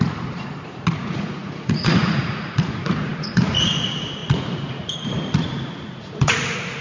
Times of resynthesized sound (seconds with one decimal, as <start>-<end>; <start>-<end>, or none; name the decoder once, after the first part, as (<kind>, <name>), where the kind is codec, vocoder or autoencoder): 0.0-6.8 (vocoder, Vocos)